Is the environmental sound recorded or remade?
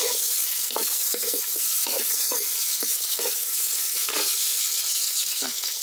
remade